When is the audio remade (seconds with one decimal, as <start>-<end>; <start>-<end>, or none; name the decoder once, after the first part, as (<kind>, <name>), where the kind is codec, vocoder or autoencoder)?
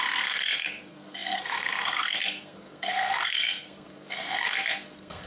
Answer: 0.0-5.3 (codec, SNAC)